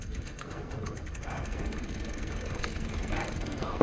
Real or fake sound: fake